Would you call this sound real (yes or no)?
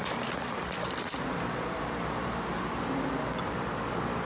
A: no